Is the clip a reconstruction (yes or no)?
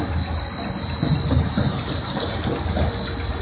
no